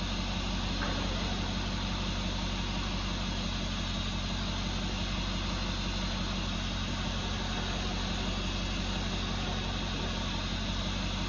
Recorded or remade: recorded